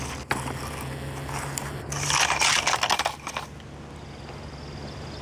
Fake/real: real